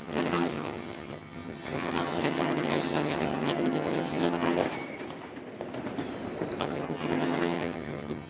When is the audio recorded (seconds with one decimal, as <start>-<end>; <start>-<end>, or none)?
4.6-6.6